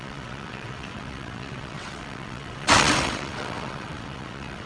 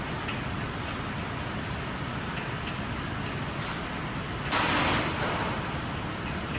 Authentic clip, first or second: second